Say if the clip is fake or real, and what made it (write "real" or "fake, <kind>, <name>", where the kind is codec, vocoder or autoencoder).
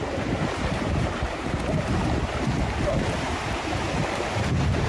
fake, vocoder, BigVGAN v2